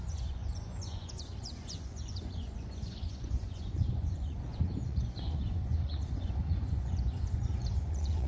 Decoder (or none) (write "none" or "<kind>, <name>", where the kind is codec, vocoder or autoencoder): vocoder, Vocos